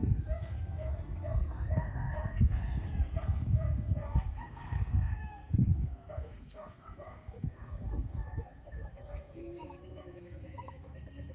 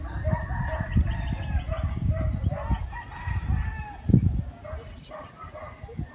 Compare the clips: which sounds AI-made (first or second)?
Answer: first